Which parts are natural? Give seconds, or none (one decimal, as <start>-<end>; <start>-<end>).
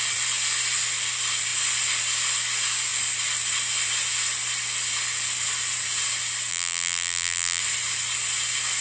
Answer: 0.0-6.5; 7.6-8.8